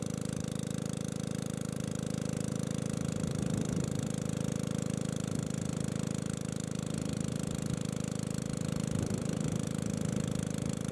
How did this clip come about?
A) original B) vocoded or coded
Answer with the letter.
A